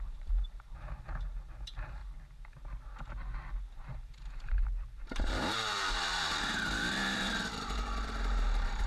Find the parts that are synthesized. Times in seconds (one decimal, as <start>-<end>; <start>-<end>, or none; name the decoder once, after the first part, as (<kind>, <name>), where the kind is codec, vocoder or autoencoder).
0.0-2.0 (vocoder, BigVGAN v2); 3.7-8.9